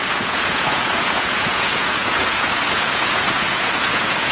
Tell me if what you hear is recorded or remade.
remade